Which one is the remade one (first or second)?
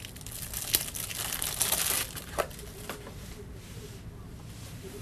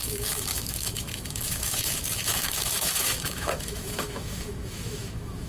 second